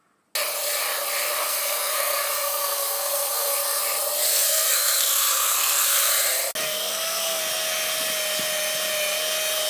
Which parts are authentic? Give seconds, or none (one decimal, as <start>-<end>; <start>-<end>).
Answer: 0.0-1.4; 3.8-4.3; 6.1-6.6; 7.4-9.7